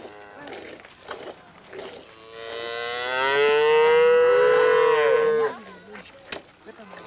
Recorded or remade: recorded